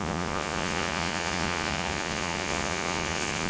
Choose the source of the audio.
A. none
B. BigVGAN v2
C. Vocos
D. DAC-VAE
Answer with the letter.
C